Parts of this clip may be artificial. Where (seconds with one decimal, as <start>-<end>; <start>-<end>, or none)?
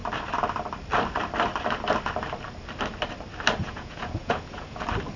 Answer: 3.6-4.8